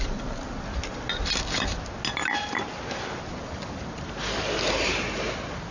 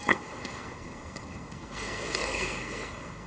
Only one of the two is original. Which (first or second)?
first